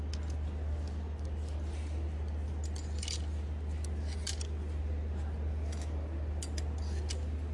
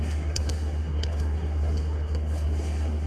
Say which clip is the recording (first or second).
first